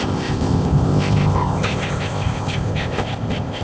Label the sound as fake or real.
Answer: fake